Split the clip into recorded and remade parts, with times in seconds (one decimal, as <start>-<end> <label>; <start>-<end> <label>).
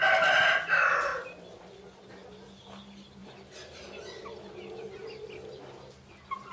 0.0-6.5 recorded